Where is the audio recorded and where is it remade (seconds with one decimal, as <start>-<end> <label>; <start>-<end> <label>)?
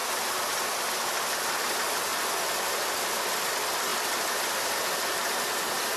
0.0-6.0 recorded